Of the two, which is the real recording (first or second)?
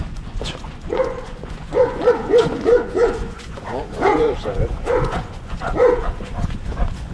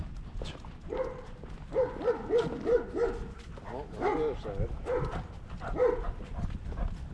second